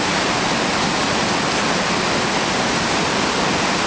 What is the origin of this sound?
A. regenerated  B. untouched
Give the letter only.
B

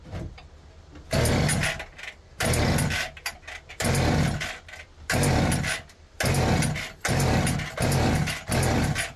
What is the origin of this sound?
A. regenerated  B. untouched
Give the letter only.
B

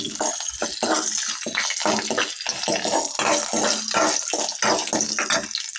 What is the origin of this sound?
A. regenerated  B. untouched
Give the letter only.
B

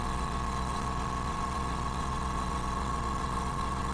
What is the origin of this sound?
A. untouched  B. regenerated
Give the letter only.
B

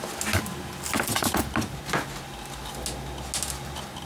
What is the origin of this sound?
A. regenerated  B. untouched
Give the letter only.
B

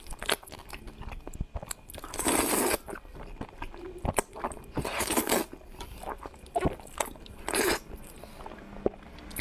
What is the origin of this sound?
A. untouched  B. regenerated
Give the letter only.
A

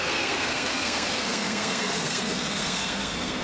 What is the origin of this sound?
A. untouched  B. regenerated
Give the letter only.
B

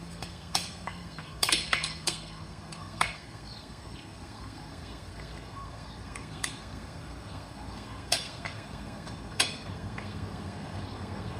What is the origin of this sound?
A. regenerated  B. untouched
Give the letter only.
A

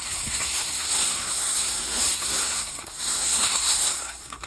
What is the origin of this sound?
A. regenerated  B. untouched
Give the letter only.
A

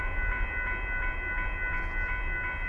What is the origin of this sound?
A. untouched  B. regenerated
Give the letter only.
A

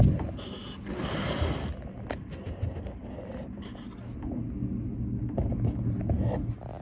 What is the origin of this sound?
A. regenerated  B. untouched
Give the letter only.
B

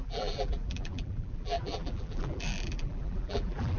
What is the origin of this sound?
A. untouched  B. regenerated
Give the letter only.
B